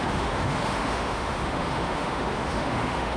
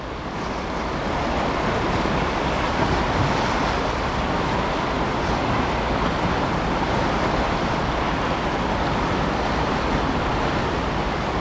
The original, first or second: second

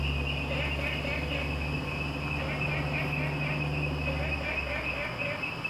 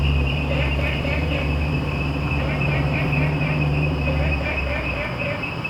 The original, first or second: first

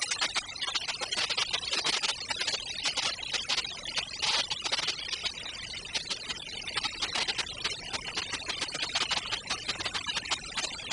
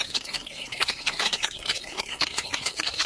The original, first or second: first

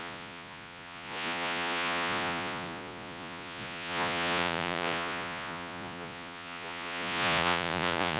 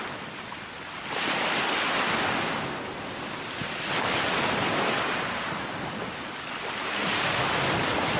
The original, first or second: second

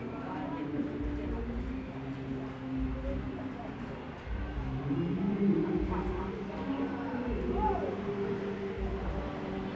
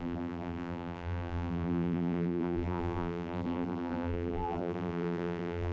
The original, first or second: first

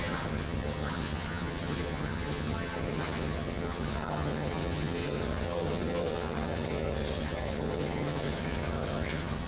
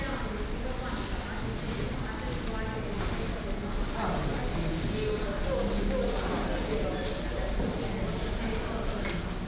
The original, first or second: second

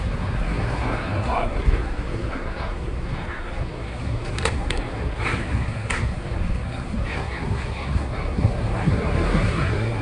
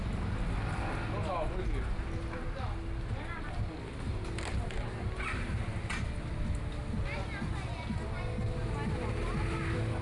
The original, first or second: second